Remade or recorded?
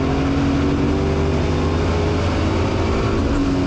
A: recorded